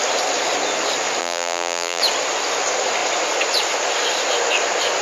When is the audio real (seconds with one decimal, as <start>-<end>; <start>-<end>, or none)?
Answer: 0.0-1.2; 2.0-5.0